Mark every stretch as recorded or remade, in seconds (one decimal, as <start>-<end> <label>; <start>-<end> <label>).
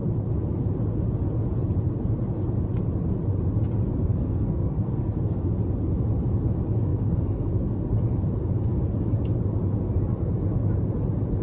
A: 0.0-4.1 recorded; 4.1-5.5 remade; 5.5-6.9 recorded; 6.9-7.5 remade; 7.5-11.4 recorded